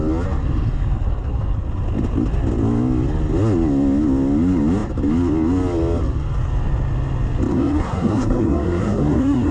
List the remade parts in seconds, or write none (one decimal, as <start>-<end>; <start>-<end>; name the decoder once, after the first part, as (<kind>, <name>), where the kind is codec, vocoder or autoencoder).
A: 7.5-9.5 (codec, SNAC)